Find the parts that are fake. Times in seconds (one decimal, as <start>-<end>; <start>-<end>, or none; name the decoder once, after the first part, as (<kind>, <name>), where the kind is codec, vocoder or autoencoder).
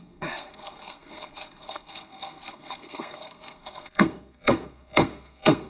0.0-5.7 (codec, SNAC)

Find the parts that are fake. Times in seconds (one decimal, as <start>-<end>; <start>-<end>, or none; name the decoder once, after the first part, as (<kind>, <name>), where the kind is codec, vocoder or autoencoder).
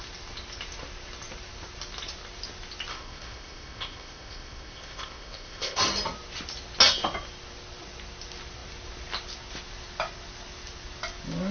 2.9-5.8 (codec, ZipCodec)